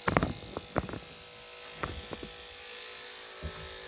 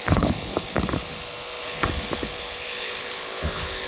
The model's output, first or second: second